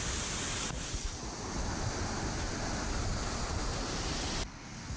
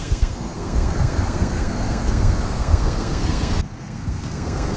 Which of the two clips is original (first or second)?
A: first